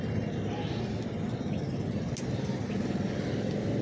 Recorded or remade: recorded